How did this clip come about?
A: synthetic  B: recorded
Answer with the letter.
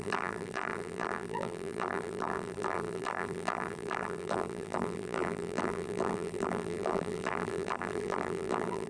A